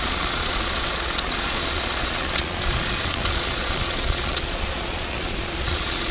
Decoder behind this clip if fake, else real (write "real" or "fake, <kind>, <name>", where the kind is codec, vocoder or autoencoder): fake, vocoder, Vocos